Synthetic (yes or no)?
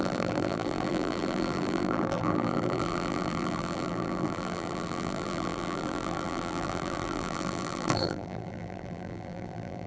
yes